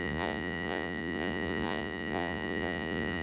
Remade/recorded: remade